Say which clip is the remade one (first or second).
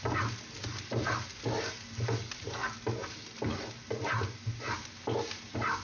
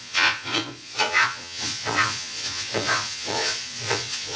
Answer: second